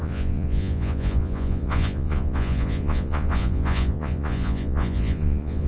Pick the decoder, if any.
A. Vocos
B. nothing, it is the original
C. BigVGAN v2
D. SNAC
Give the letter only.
A